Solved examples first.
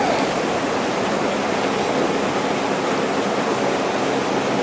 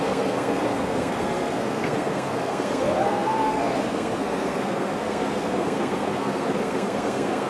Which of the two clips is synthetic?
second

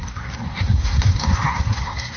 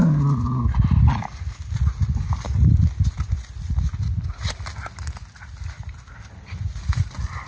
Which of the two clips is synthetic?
first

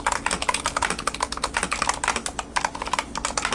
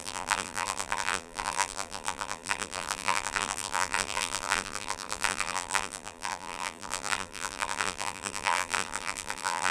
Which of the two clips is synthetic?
second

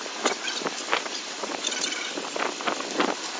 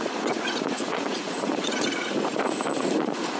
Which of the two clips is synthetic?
second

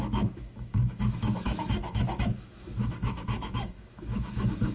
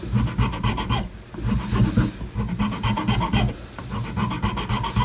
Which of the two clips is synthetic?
first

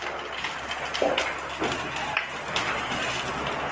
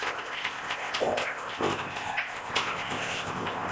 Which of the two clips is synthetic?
second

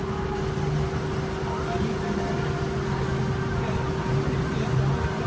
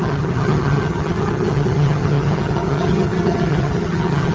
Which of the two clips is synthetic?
second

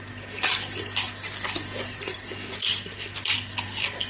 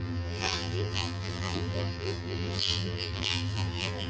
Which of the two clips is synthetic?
second